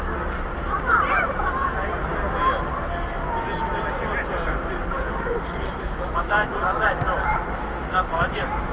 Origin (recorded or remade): recorded